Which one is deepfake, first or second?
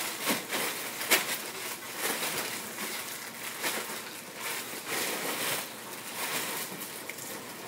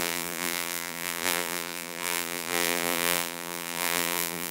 second